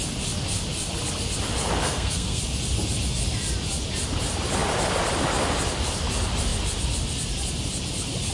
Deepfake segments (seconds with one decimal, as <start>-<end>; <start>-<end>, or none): 1.8-2.4